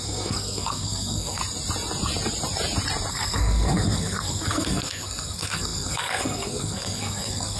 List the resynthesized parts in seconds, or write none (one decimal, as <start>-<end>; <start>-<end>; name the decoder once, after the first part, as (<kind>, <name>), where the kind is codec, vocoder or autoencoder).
0.0-1.4 (codec, SNAC); 3.1-7.6